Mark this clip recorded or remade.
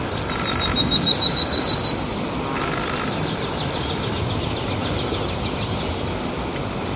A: recorded